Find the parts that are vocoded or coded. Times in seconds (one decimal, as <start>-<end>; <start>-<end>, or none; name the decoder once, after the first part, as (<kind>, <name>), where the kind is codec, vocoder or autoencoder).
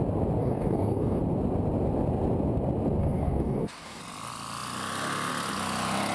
0.4-1.2 (codec, DAC); 3.0-4.0